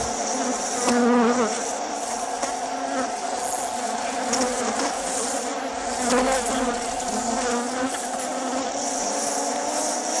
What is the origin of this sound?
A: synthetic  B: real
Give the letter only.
B